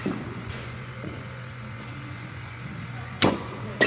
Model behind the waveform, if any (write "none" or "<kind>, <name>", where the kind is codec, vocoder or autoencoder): vocoder, Vocos